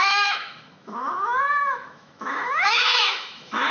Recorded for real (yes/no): no